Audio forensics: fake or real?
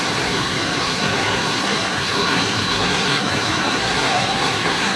fake